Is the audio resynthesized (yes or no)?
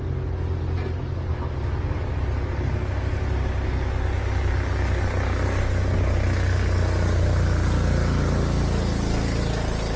no